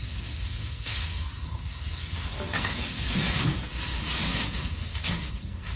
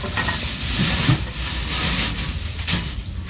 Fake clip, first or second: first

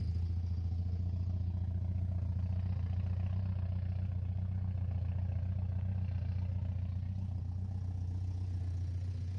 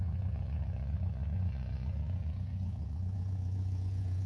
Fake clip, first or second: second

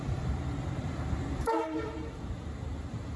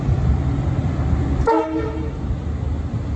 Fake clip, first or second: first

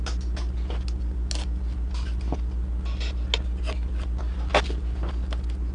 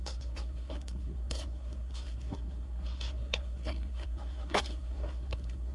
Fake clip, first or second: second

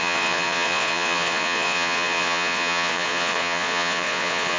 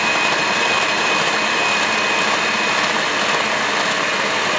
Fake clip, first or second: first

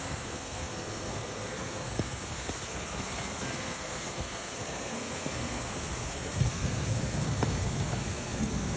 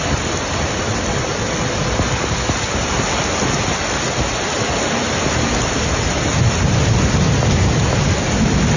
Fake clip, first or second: first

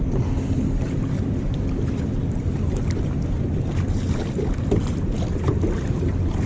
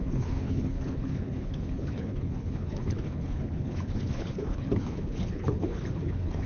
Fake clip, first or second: second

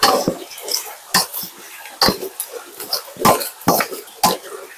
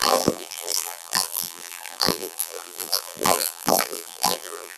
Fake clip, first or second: second